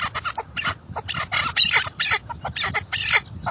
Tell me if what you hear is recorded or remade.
recorded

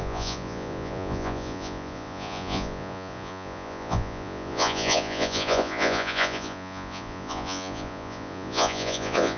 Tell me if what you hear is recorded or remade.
remade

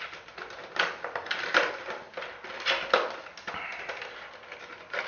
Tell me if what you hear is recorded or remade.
recorded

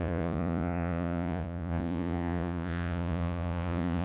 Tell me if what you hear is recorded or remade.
remade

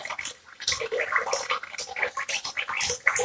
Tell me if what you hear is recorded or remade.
recorded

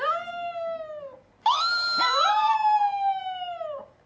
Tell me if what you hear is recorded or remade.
recorded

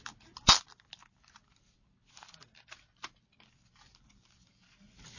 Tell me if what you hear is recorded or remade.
recorded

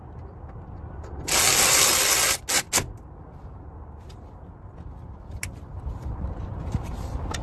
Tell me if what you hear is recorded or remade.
recorded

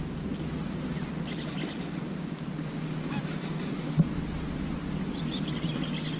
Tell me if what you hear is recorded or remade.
recorded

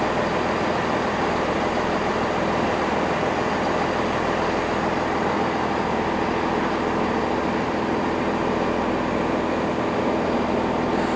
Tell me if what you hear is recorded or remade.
recorded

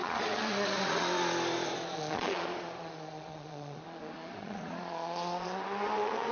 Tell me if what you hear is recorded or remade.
remade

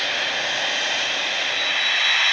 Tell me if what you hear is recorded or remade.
recorded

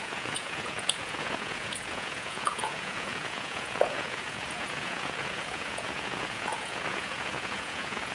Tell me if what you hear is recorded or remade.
remade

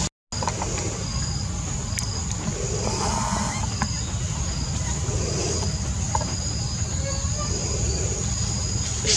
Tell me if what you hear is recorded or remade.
recorded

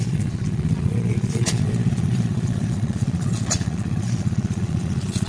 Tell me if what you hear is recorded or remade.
remade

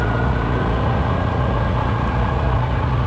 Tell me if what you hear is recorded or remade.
remade